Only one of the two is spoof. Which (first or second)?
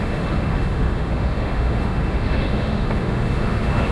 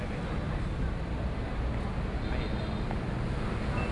first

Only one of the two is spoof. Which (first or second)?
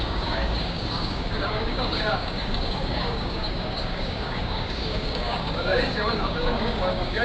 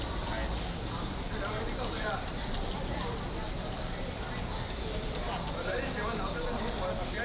first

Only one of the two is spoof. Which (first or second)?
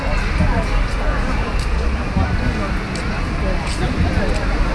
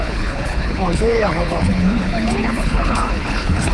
second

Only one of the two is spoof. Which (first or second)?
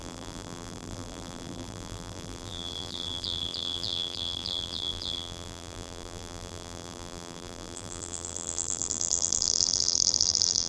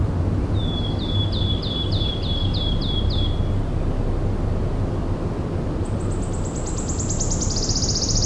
first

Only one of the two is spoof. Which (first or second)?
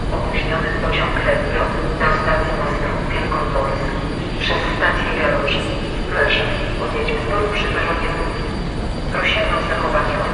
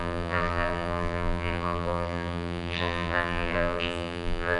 second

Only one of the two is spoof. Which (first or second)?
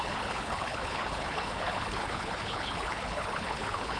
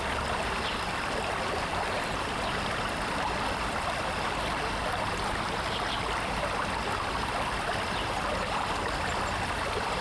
first